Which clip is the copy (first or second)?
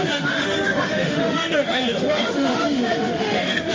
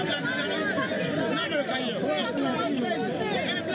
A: first